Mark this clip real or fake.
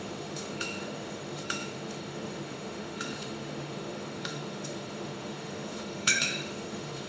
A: fake